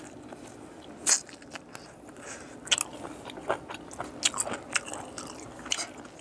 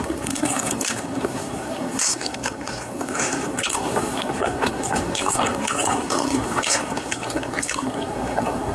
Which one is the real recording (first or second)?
first